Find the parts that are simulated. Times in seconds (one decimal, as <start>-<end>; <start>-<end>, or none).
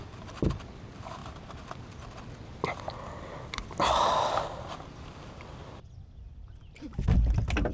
0.0-6.9